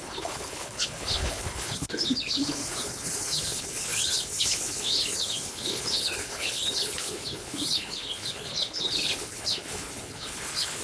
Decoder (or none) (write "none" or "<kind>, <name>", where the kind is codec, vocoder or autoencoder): codec, HILCodec